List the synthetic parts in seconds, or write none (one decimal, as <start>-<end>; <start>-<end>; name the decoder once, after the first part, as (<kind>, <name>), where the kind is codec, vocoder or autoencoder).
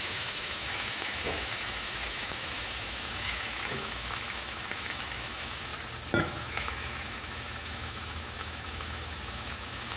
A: 0.0-5.7 (autoencoder, DAC-VAE); 6.2-10.0